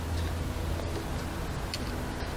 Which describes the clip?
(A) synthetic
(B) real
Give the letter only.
B